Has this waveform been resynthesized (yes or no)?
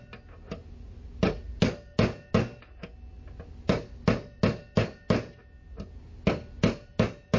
no